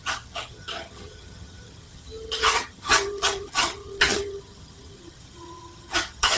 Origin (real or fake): fake